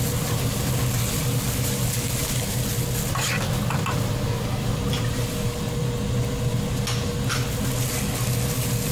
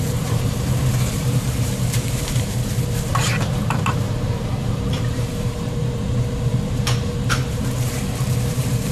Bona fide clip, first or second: first